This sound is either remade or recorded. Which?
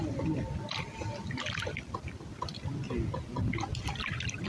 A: recorded